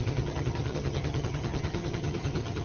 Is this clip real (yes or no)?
no